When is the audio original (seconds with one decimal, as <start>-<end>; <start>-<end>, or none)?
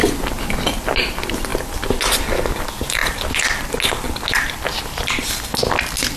0.0-6.2